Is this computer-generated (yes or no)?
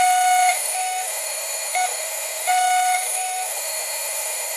yes